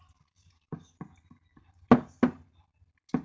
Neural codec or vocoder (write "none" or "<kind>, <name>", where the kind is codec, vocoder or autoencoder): none